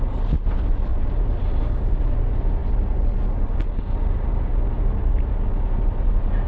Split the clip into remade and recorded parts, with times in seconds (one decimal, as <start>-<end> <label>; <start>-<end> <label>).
0.0-0.9 recorded; 0.9-2.2 remade; 2.2-6.5 recorded